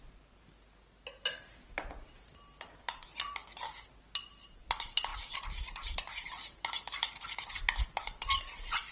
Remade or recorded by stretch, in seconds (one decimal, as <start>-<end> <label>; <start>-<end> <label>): 0.0-8.9 recorded